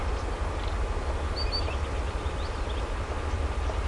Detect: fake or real real